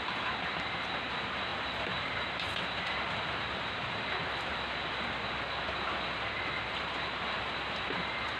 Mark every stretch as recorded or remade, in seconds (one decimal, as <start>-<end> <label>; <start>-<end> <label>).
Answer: 0.0-1.5 recorded; 1.5-4.0 remade; 4.0-8.4 recorded